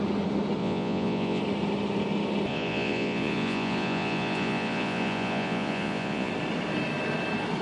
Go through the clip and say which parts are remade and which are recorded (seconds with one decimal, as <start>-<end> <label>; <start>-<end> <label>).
0.0-0.6 recorded; 0.6-1.4 remade; 1.4-2.5 recorded; 2.5-6.3 remade; 6.3-7.6 recorded